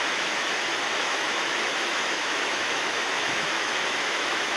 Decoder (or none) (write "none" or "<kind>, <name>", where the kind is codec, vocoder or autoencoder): autoencoder, DAC-VAE